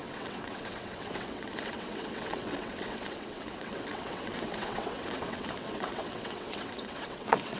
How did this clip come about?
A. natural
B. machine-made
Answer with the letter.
B